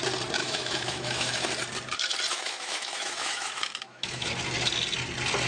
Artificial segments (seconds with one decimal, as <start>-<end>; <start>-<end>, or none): 0.4-1.5; 2.3-4.3